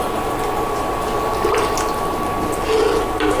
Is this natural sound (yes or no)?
yes